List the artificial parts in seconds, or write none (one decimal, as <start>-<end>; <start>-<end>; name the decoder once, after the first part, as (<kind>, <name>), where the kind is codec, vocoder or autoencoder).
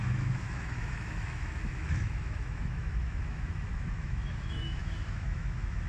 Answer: 0.0-5.9 (autoencoder, DAC-VAE)